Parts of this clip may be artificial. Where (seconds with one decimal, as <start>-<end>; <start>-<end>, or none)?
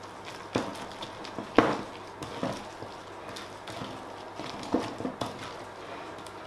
none